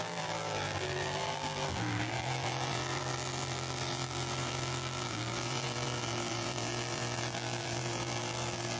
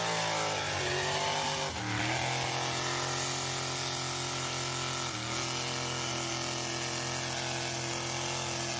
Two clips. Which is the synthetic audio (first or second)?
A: first